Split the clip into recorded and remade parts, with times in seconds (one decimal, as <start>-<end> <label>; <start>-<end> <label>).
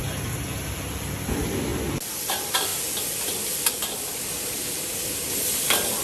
0.0-0.7 recorded; 0.7-1.7 remade; 1.7-2.3 recorded; 2.3-2.7 remade; 2.7-5.3 recorded; 5.3-6.0 remade